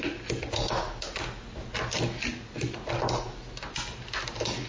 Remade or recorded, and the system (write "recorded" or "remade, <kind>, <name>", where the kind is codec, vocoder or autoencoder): recorded